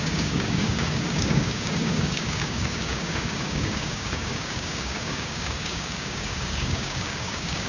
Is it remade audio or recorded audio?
remade